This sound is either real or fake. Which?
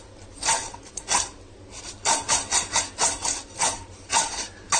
real